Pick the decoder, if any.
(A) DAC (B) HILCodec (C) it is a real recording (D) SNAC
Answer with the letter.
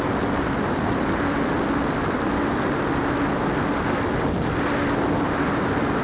C